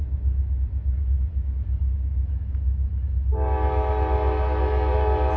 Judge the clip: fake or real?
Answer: real